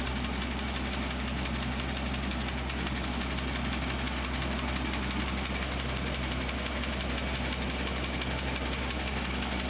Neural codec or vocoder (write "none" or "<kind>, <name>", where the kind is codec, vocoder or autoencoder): none